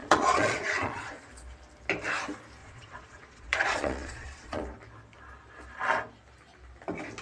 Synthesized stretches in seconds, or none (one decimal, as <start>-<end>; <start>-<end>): 0.0-1.3; 2.6-4.6